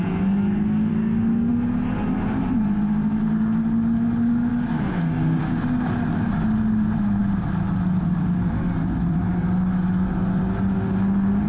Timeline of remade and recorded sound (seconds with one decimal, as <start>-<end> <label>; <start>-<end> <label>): 0.0-0.9 recorded; 0.9-1.5 remade; 1.5-4.5 recorded; 4.5-5.4 remade; 5.4-11.5 recorded